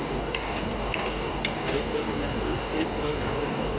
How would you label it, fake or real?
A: fake